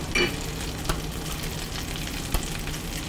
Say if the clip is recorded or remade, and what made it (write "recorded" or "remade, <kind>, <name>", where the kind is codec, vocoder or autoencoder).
recorded